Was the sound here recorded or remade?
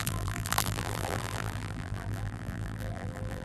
remade